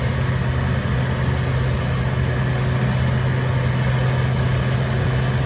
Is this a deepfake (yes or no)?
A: no